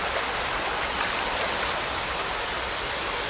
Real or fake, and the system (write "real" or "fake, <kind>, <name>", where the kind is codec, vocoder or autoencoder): real